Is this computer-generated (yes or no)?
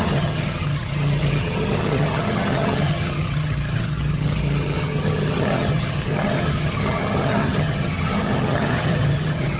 yes